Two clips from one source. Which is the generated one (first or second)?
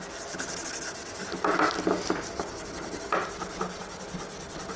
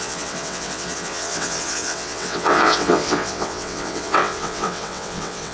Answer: second